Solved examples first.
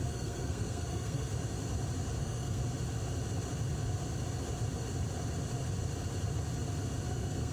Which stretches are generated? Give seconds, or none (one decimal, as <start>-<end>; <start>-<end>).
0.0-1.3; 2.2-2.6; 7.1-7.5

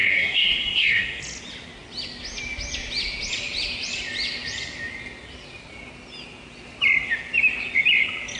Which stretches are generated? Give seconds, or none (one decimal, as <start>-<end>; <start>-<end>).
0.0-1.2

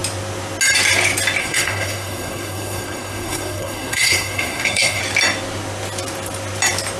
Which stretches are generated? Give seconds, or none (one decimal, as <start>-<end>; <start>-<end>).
1.4-5.0